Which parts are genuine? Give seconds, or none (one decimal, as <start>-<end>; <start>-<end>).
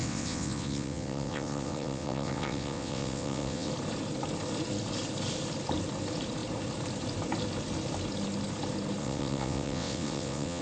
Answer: 3.7-9.0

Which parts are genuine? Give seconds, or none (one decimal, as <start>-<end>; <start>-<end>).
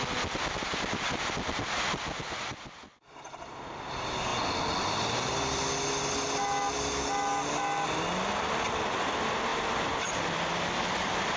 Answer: 0.0-11.4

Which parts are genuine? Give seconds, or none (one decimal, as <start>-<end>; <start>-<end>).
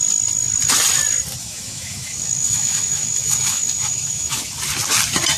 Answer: 0.0-1.4; 4.5-5.4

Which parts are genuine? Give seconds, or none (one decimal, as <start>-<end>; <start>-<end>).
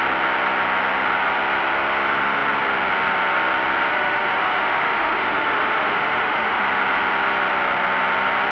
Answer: 0.0-3.9; 6.6-8.5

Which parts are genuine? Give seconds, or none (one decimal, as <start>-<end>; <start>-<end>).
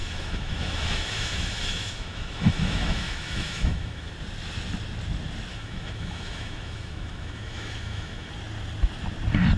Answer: 4.1-5.5; 8.3-9.6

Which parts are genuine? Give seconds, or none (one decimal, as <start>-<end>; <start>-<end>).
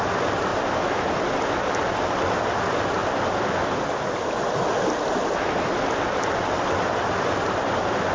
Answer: 0.0-8.1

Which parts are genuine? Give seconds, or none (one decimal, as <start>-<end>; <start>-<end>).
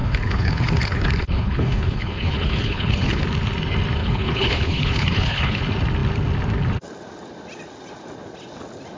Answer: 3.2-4.0; 5.6-9.0